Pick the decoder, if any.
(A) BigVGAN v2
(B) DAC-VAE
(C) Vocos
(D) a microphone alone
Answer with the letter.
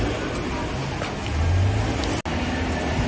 D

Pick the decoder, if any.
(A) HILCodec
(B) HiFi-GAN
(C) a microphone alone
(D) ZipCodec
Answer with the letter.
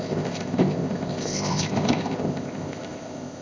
D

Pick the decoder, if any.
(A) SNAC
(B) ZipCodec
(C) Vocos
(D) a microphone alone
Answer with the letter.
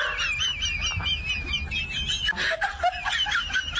D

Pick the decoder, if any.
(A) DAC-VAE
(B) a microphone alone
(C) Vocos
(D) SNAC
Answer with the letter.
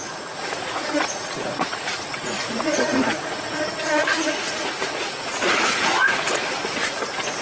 C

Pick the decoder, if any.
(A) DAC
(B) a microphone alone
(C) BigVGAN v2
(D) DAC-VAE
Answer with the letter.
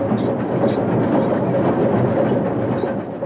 B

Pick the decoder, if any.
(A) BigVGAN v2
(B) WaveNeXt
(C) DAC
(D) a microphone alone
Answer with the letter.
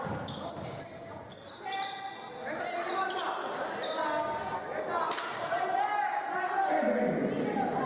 D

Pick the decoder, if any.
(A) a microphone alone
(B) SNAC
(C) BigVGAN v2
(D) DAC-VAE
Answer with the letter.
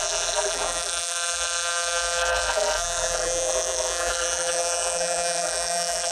C